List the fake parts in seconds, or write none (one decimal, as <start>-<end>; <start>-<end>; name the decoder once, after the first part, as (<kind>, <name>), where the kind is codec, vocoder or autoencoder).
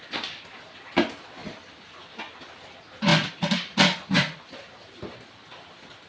1.4-2.2 (vocoder, BigVGAN v2); 3.1-4.6